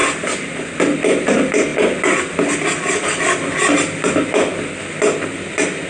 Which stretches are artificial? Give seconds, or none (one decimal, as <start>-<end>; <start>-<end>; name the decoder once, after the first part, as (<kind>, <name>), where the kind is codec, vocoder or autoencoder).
none